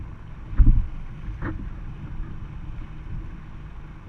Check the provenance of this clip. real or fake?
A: real